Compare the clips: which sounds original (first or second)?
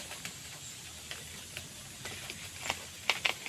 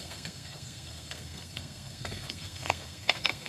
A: first